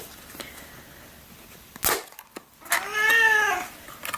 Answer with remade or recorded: recorded